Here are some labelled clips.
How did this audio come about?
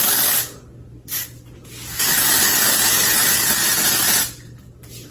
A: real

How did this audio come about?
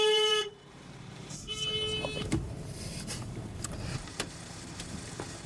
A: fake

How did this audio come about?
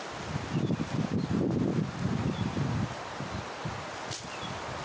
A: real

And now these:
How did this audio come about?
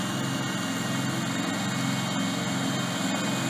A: real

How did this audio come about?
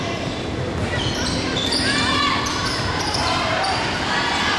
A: fake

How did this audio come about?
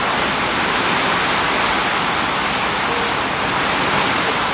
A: real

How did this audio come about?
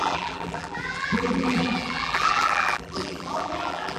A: fake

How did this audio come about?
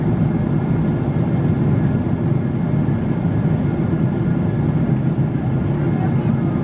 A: real